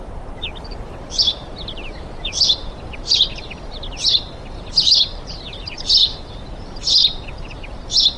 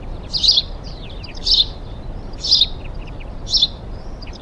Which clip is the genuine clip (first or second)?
second